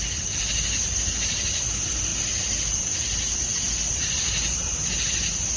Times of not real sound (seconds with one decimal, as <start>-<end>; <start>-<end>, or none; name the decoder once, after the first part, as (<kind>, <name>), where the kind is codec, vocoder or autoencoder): none